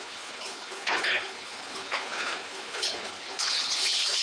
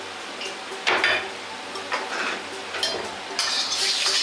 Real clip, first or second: second